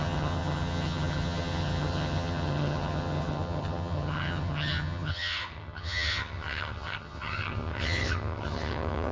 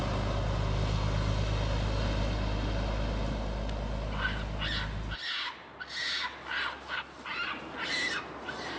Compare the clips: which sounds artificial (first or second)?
first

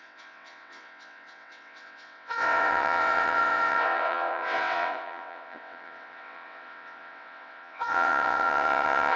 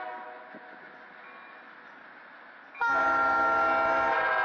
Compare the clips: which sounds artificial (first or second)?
first